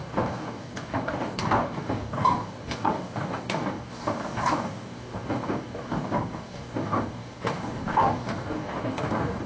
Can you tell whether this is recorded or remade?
remade